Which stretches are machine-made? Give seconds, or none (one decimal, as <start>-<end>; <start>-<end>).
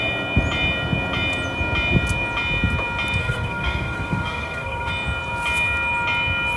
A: 3.2-4.9